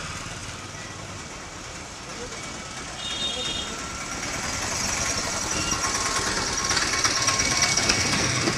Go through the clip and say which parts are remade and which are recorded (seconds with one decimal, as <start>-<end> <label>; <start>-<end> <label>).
0.0-7.7 recorded; 7.7-8.6 remade